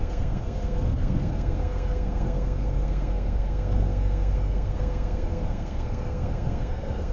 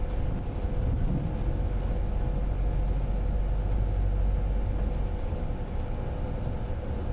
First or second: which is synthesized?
first